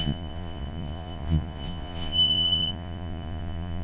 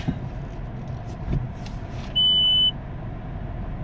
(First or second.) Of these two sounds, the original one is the second